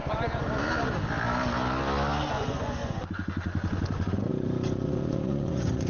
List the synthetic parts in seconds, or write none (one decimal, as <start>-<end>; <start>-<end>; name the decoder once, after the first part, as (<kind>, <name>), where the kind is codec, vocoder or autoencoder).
2.3-5.9 (vocoder, Vocos)